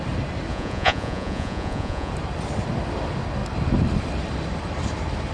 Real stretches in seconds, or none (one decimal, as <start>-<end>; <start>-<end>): 0.0-0.5; 2.1-5.3